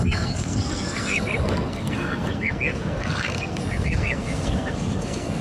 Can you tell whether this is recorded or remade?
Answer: remade